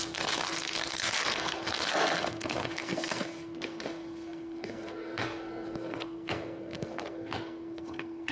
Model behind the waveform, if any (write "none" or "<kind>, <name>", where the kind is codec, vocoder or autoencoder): codec, SNAC